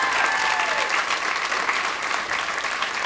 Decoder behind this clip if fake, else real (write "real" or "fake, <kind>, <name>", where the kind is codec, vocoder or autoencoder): real